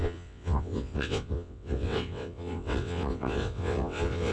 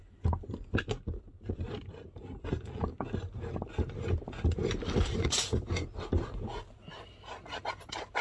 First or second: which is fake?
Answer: first